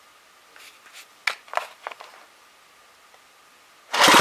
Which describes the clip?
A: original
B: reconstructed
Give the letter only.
A